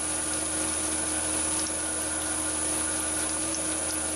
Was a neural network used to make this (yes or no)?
no